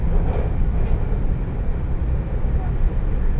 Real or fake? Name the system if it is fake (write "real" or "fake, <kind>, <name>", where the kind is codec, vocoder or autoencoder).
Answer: real